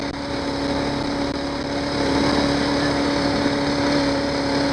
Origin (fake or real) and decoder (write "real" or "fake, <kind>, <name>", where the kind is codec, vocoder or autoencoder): real